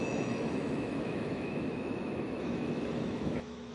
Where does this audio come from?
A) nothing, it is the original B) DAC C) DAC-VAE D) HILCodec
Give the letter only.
C